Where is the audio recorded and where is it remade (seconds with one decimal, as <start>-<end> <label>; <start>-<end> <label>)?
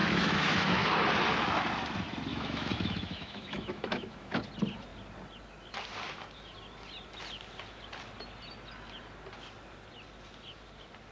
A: 0.0-0.9 remade; 0.9-2.3 recorded; 2.3-4.4 remade; 4.4-11.1 recorded